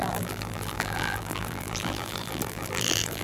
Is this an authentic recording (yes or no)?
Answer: no